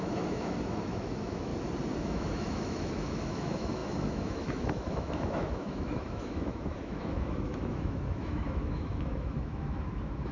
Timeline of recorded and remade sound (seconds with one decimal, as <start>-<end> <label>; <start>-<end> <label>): 0.0-1.5 remade; 1.5-2.0 recorded; 2.0-10.3 remade